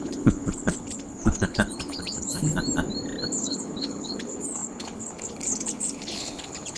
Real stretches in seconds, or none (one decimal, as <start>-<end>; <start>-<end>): 2.5-3.4